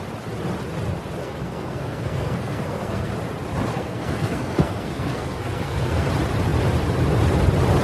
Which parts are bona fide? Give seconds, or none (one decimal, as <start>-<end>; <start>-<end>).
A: 0.0-1.2; 3.1-3.7; 6.1-7.8